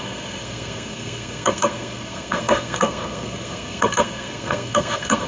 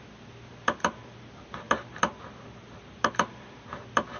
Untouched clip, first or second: second